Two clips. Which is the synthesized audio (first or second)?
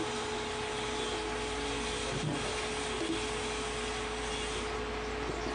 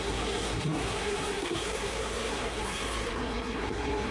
second